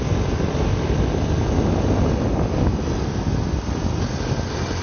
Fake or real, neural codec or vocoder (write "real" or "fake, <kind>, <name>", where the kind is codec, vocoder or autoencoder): real